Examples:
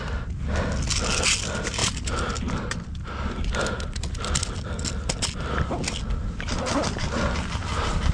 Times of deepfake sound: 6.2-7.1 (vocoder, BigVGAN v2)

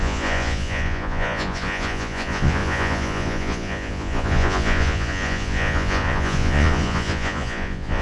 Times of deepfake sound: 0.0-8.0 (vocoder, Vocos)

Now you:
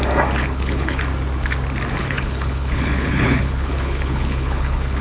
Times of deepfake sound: 0.4-1.0 (codec, HILCodec); 2.0-5.0

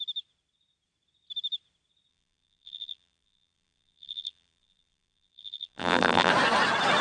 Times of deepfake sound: 2.1-6.3 (vocoder, BigVGAN v2)

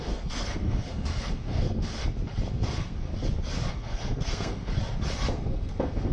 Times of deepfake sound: 0.0-2.0 (codec, SNAC); 2.5-3.1; 3.7-4.7; 5.3-6.1

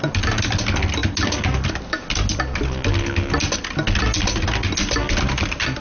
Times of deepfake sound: none